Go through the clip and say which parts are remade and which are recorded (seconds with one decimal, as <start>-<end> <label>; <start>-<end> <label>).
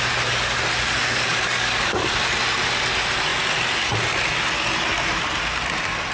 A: 0.0-1.0 recorded; 1.0-2.1 remade; 2.1-6.1 recorded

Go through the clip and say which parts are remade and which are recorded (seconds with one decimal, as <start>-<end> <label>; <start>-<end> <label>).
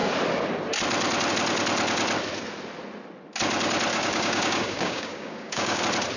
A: 0.0-3.9 recorded; 3.9-5.8 remade; 5.8-6.2 recorded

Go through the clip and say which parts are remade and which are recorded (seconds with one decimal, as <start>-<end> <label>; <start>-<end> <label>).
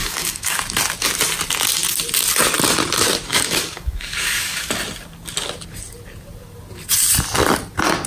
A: 0.0-0.6 remade; 0.6-3.3 recorded; 3.3-4.7 remade; 4.7-8.1 recorded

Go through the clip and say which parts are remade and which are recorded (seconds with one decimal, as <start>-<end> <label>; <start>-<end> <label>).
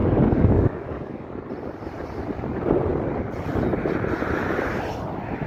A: 0.0-1.4 remade; 1.4-5.5 recorded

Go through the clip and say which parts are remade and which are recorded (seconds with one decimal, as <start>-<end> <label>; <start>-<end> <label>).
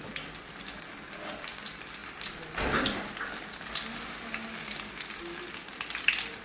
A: 0.0-6.4 recorded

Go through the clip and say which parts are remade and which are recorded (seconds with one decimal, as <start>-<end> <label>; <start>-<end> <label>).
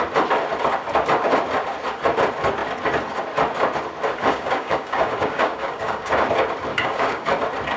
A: 0.0-4.2 recorded; 4.2-6.1 remade; 6.1-6.7 recorded; 6.7-7.3 remade; 7.3-7.8 recorded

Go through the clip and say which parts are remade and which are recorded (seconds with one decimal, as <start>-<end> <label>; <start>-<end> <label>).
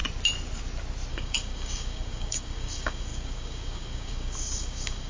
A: 0.0-1.1 recorded; 1.1-5.1 remade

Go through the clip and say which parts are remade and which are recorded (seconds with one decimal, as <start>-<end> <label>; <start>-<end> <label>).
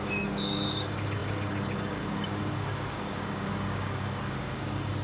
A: 0.0-5.0 remade